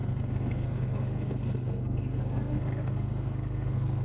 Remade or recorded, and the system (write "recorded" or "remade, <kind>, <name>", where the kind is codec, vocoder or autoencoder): remade, codec, SNAC